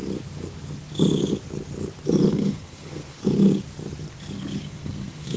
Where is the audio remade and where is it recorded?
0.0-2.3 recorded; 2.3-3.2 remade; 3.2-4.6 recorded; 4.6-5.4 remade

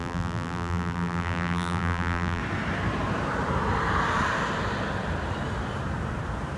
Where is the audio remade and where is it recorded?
0.0-2.4 remade; 2.4-6.6 recorded

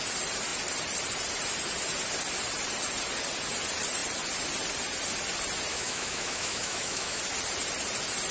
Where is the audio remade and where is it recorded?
0.0-5.7 recorded; 5.7-7.2 remade; 7.2-8.3 recorded

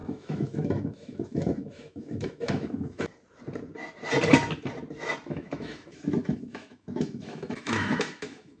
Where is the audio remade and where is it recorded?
0.0-3.1 remade; 3.1-5.3 recorded; 5.3-8.6 remade

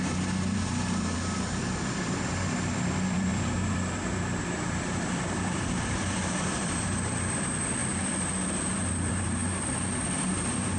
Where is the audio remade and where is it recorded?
0.0-9.4 remade; 9.4-10.0 recorded; 10.0-10.8 remade

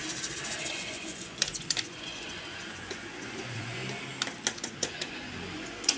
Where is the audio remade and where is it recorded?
0.0-0.7 recorded; 0.7-3.8 remade; 3.8-4.5 recorded; 4.5-6.0 remade

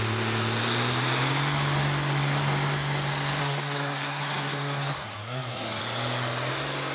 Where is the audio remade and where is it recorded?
0.0-3.4 recorded; 3.4-5.8 remade; 5.8-6.9 recorded